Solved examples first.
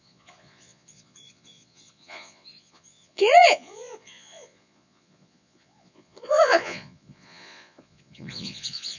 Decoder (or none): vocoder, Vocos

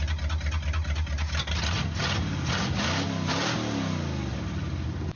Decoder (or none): none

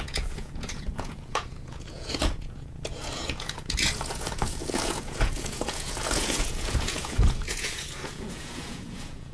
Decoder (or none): vocoder, Vocos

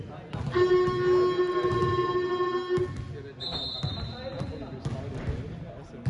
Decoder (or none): none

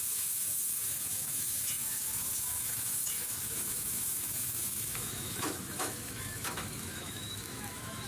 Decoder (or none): autoencoder, DAC-VAE